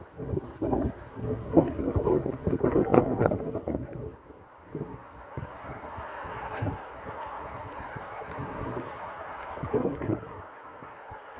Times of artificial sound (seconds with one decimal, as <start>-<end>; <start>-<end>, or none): 0.0-11.4

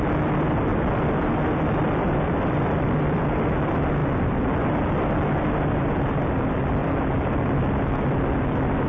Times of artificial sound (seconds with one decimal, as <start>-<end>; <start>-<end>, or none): 0.7-3.2; 6.8-7.6

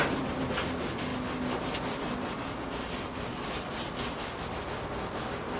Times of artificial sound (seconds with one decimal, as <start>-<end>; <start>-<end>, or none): none

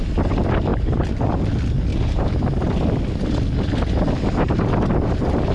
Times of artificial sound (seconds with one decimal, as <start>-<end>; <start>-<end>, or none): 0.7-1.2; 1.9-2.5

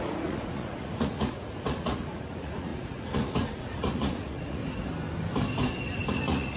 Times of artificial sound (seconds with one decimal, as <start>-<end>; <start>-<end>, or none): 0.0-4.6; 6.1-6.6

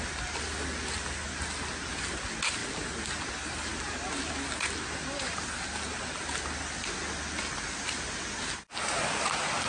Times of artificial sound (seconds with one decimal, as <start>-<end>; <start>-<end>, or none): none

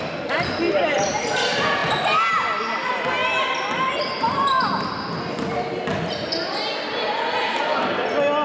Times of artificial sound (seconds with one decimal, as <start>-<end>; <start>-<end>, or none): none